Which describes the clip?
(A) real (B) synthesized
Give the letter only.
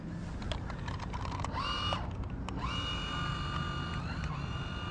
A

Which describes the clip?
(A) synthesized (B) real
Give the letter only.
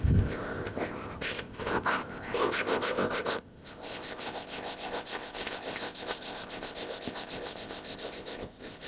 A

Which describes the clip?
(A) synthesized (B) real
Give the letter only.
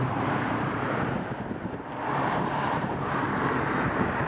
A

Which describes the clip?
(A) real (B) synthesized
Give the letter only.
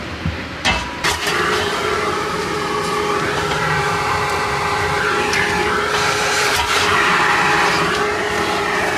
B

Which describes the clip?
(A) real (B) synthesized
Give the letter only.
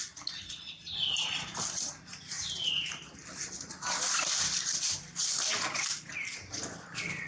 A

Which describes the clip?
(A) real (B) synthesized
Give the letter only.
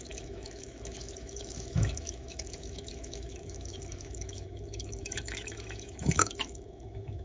B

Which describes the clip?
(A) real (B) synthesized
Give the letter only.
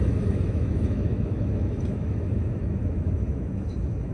B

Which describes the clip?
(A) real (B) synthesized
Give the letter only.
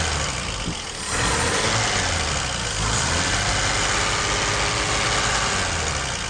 A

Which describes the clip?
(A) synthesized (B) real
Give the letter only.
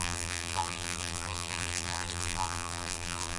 A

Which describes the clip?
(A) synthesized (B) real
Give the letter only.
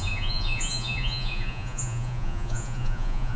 A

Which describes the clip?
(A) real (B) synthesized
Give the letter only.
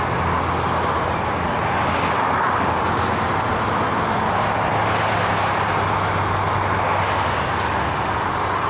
A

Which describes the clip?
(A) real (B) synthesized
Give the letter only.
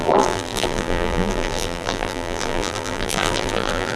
B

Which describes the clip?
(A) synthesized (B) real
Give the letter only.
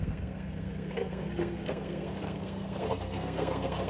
A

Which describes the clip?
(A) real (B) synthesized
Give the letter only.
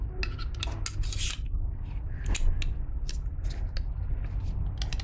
A